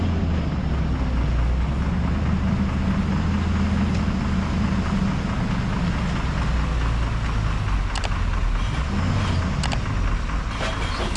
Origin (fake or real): real